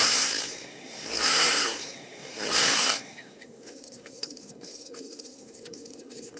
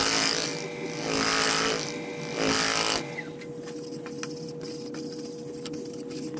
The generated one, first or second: first